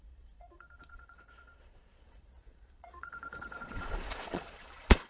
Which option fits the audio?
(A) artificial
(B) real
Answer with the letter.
A